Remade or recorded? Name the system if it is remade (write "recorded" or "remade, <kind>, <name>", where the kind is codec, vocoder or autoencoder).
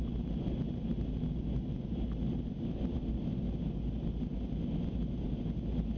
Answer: recorded